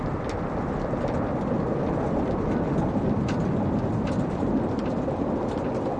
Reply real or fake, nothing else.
real